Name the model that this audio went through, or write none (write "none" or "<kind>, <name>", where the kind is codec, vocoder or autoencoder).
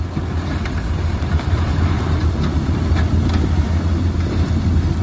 none